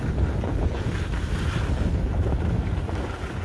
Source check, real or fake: real